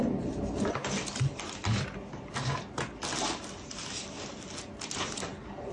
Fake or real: real